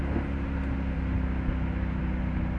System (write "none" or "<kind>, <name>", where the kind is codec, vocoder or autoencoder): none